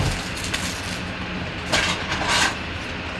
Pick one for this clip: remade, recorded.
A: recorded